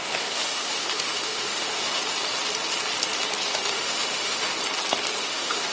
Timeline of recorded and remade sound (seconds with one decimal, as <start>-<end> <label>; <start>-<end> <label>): 0.0-2.0 remade; 2.0-3.5 recorded; 3.5-4.5 remade; 4.5-5.2 recorded; 5.2-5.7 remade